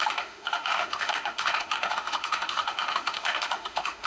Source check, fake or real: fake